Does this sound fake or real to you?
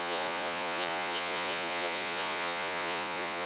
fake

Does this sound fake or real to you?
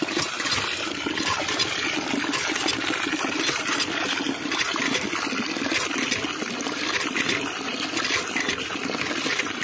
real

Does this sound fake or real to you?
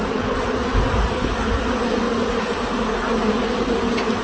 real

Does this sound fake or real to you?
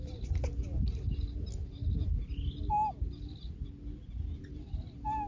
real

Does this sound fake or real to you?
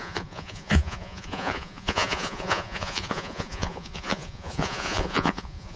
fake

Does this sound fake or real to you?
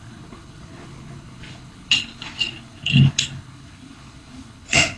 fake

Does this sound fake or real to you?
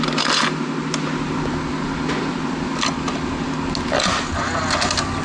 real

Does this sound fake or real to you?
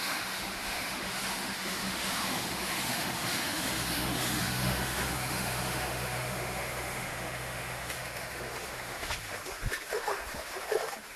fake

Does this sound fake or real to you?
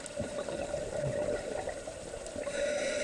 real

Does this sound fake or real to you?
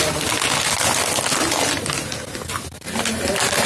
real